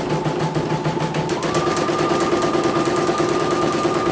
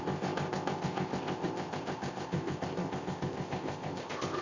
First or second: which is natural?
first